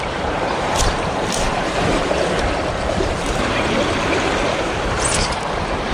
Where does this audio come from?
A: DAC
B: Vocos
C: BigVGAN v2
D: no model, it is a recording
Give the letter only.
C